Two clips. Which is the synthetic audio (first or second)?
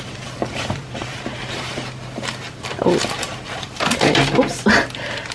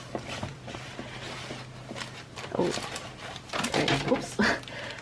first